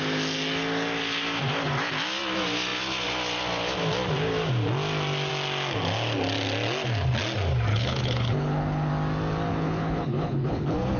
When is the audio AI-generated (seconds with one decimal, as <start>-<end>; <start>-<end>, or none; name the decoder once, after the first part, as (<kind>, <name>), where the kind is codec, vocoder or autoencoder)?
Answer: 7.7-8.9 (codec, HILCodec); 9.5-11.0